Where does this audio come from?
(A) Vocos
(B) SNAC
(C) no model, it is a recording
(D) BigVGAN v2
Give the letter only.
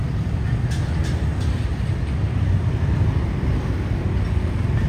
C